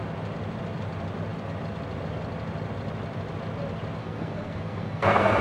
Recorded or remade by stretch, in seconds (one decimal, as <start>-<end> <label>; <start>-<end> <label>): 0.0-4.0 recorded; 4.0-5.4 remade